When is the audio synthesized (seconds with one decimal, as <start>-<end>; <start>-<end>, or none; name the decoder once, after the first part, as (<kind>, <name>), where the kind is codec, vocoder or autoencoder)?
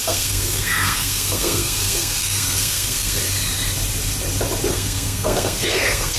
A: 0.0-3.2 (codec, SNAC); 4.7-6.2